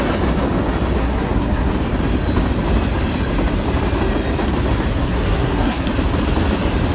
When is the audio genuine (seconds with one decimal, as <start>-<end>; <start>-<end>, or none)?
0.0-1.0; 1.7-4.9; 5.9-6.9